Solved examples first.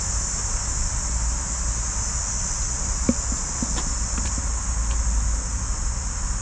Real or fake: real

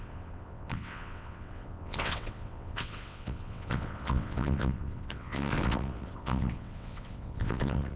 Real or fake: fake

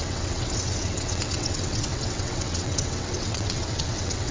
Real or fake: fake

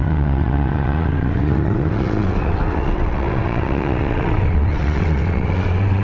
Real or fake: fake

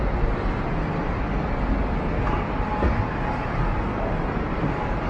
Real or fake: real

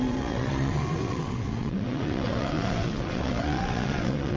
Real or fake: fake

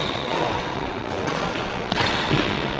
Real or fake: fake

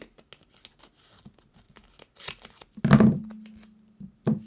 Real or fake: real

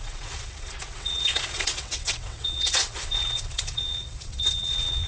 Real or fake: fake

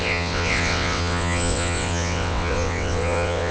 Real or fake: fake